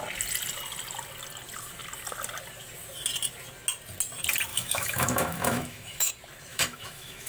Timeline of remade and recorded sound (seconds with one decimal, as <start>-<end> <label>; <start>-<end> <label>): 0.0-4.5 recorded; 4.5-6.1 remade; 6.1-6.5 recorded; 6.5-7.3 remade